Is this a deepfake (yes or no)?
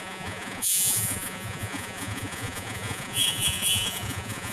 yes